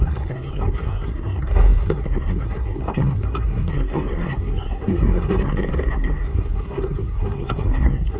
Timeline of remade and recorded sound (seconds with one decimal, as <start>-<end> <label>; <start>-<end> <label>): 0.0-8.2 remade